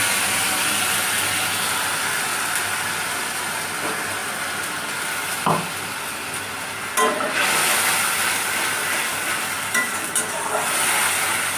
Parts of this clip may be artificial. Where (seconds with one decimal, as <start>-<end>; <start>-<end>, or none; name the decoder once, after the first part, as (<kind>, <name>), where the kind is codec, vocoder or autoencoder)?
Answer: none